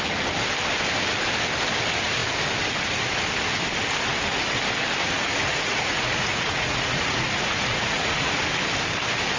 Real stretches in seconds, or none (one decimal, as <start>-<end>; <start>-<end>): 0.0-5.0; 8.4-9.4